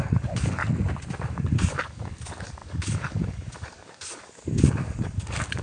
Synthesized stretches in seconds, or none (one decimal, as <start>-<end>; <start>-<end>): 0.0-0.6; 1.3-5.6